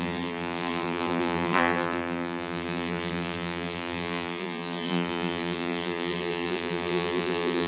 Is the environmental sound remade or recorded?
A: remade